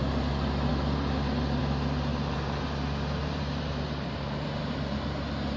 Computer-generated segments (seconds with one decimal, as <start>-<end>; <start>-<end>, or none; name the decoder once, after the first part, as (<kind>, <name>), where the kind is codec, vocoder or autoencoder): 2.1-2.6 (vocoder, BigVGAN v2); 3.2-5.6